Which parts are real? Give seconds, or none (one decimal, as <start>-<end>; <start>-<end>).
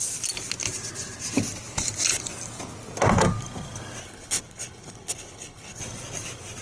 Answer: 0.0-4.0; 5.8-6.6